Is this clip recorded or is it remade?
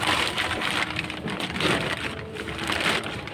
remade